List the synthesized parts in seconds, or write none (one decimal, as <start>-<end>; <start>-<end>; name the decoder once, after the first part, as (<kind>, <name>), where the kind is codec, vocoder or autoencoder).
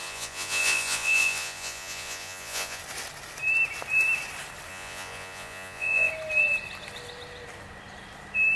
0.0-2.8 (vocoder, Vocos); 4.7-6.1